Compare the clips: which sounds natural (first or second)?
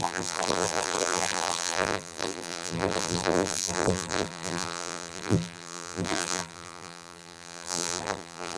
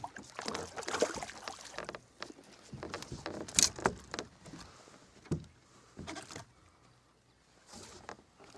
second